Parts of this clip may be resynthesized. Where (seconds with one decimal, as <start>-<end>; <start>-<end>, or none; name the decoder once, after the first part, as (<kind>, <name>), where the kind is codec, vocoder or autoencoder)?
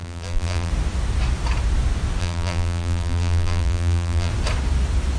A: 0.0-0.7 (vocoder, BigVGAN v2); 2.2-4.3